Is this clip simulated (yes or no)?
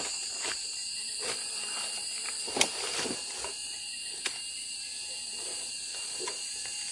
no